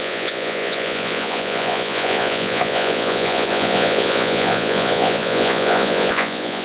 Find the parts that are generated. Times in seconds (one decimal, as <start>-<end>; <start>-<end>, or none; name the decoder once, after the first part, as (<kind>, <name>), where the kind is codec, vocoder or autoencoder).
0.0-6.6 (vocoder, Vocos)

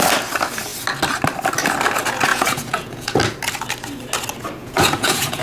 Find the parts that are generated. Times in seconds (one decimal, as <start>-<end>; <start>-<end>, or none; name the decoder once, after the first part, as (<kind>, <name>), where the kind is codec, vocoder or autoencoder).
2.3-3.2 (vocoder, Vocos); 4.6-5.4

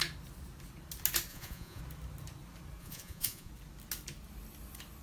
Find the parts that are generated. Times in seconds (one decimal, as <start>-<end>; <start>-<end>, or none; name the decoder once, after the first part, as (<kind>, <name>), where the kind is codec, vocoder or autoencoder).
1.3-1.8 (vocoder, Vocos); 2.8-3.5

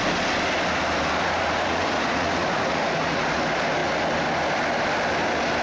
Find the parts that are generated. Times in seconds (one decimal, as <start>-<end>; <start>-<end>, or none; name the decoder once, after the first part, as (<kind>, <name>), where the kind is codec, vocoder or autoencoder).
1.2-3.4 (vocoder, Vocos)